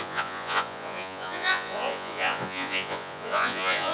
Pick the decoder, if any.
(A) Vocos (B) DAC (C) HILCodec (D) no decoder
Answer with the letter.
A